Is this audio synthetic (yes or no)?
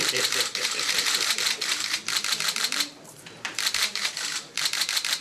yes